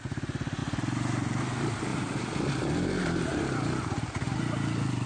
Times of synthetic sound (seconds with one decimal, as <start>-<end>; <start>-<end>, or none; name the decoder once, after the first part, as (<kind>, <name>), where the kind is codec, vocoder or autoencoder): 1.9-4.4 (vocoder, BigVGAN v2)